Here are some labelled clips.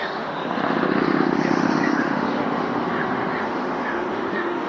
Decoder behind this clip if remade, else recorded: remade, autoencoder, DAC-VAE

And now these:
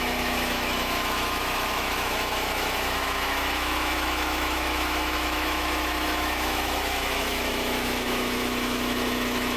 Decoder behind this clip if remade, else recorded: remade, autoencoder, DAC-VAE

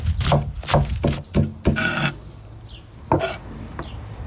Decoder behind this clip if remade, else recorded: recorded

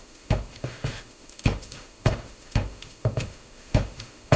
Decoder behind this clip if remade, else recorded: remade, autoencoder, DAC-VAE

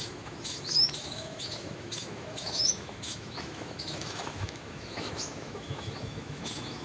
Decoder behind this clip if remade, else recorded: remade, autoencoder, DAC-VAE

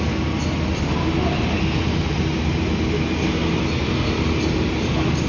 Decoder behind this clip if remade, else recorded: recorded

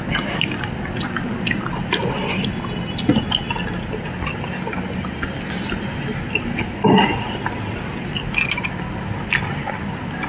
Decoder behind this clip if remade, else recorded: recorded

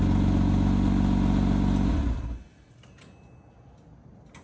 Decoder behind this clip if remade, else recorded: recorded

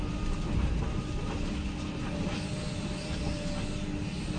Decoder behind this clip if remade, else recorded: recorded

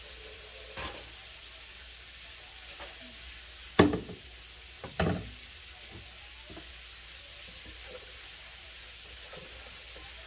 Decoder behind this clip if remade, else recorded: recorded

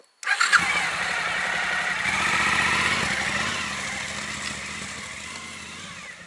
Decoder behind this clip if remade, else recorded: recorded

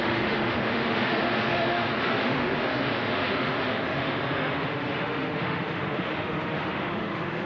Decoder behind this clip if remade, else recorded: remade, autoencoder, DAC-VAE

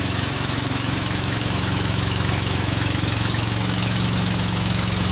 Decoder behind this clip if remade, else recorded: remade, autoencoder, DAC-VAE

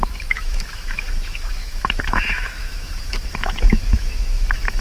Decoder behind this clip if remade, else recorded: remade, autoencoder, DAC-VAE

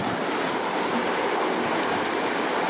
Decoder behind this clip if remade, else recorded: recorded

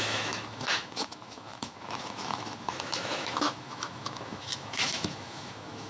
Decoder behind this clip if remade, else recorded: remade, autoencoder, DAC-VAE